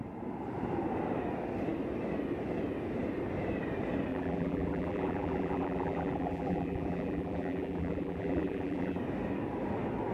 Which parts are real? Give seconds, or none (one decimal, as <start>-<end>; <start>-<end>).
0.0-4.1; 9.0-10.1